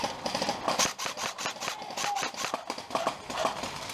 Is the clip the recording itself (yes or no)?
yes